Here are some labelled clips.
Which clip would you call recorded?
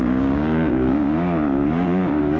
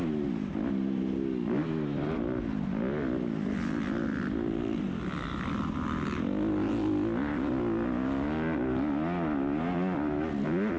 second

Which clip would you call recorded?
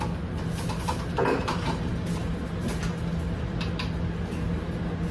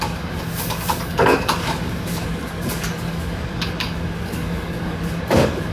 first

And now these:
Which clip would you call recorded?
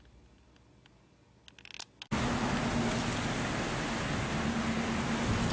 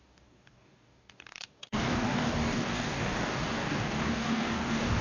first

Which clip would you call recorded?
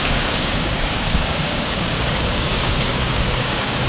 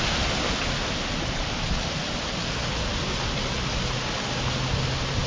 second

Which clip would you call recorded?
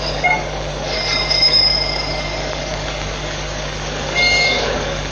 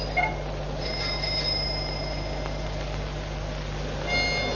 second